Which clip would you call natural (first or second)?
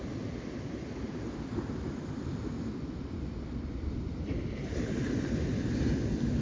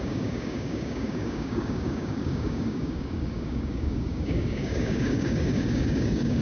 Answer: first